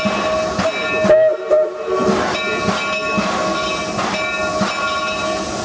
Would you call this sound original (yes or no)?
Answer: yes